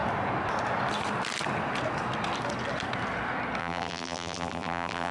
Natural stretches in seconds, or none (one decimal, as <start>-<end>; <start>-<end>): 0.0-3.6